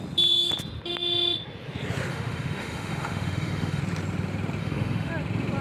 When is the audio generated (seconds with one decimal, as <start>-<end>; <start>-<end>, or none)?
2.1-3.8; 4.6-5.1

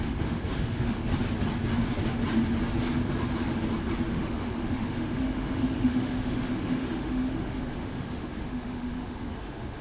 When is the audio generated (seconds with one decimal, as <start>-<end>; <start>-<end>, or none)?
0.0-1.0; 4.1-9.8

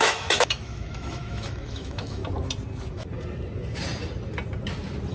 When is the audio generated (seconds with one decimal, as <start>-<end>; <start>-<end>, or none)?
0.0-2.2

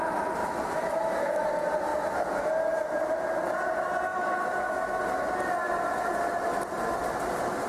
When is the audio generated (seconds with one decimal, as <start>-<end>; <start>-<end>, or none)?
0.4-1.5; 4.1-5.0

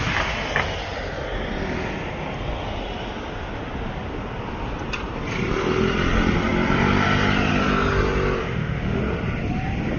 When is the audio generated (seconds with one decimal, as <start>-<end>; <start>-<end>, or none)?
8.4-9.0

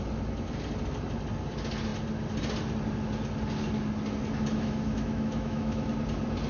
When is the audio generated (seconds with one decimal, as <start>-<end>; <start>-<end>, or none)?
4.5-5.9